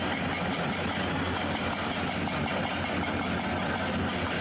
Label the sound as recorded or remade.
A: recorded